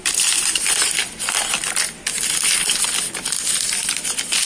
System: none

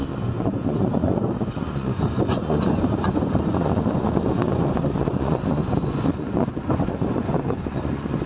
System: vocoder, Vocos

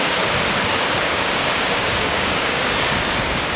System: codec, DAC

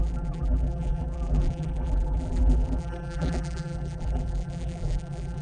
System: vocoder, BigVGAN v2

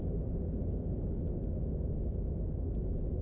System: none